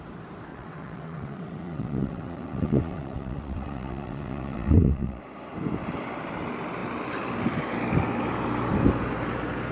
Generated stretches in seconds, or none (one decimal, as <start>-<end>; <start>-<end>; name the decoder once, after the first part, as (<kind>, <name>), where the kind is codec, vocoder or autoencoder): 0.5-5.2 (vocoder, WaveNeXt)